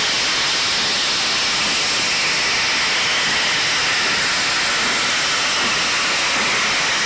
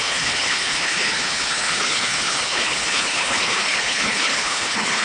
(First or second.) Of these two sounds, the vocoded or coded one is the second